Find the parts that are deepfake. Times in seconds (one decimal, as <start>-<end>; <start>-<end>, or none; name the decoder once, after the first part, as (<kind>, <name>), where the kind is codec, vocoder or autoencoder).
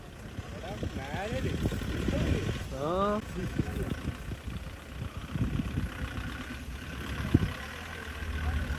none